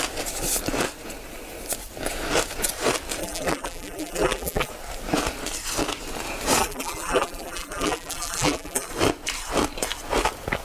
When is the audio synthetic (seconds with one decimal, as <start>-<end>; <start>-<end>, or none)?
3.2-4.7; 6.6-8.9